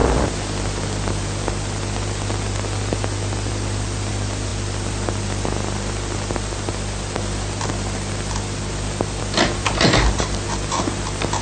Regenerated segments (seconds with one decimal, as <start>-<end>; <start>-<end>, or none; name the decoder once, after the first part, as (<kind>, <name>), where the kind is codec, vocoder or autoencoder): none